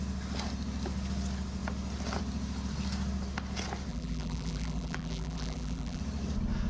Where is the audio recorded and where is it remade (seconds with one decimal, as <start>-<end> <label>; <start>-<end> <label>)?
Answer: 0.0-3.9 recorded; 3.9-6.0 remade; 6.0-6.7 recorded